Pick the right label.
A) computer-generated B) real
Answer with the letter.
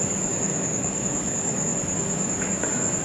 A